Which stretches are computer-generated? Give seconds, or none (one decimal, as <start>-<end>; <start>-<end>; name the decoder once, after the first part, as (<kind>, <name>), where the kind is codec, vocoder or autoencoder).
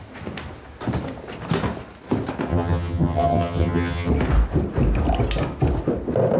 2.5-4.1 (vocoder, HiFi-GAN)